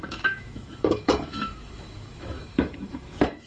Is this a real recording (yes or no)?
no